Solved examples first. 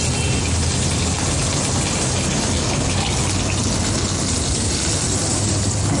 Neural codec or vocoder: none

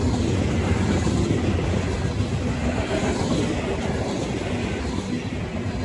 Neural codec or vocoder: none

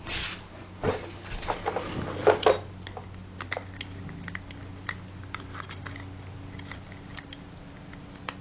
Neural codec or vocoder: none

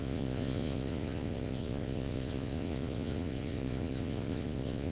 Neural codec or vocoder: vocoder, Vocos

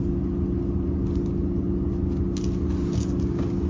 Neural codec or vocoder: none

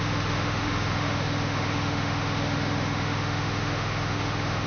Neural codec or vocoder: autoencoder, DAC-VAE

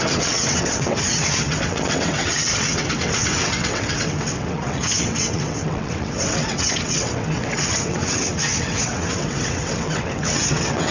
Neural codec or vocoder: vocoder, WaveNeXt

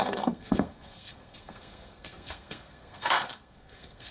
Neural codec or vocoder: codec, SNAC